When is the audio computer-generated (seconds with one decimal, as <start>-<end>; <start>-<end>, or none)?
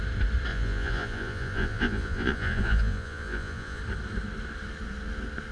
0.5-3.8